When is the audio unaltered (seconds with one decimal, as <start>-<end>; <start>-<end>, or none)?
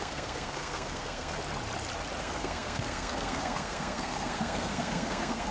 1.4-2.2